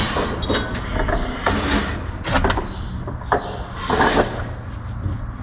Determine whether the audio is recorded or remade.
recorded